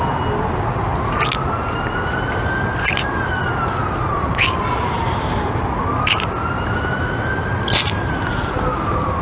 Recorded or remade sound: recorded